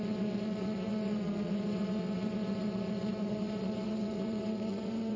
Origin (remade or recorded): remade